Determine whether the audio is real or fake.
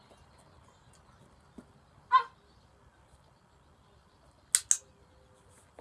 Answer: real